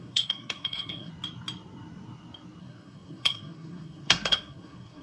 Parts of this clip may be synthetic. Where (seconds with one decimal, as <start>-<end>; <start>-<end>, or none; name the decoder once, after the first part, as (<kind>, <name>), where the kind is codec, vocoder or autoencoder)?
0.0-1.1 (codec, SNAC); 2.6-5.0

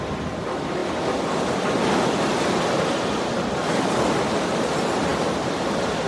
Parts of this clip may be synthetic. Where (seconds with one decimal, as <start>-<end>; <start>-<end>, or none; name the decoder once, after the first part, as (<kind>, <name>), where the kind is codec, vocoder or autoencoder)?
none

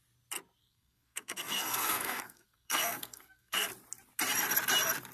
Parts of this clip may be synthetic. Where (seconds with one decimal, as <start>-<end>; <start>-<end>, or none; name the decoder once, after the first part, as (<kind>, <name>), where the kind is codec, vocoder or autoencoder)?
0.6-3.7 (codec, SNAC)

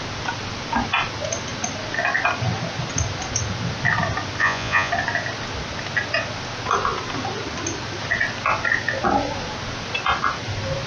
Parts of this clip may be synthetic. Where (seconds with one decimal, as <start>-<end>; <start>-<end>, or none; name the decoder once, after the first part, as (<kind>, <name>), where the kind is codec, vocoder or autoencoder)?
4.4-4.9 (vocoder, Vocos)